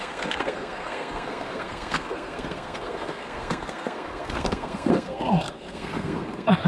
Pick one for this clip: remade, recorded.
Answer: remade